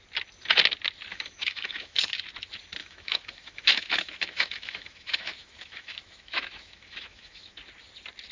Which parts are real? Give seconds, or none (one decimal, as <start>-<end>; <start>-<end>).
0.0-1.1; 2.2-2.8; 7.6-8.3